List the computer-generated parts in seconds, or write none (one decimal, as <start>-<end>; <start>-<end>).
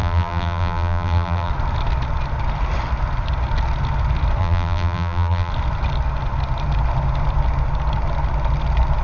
0.0-1.5; 4.4-5.5